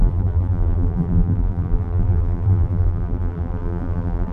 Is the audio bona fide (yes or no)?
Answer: no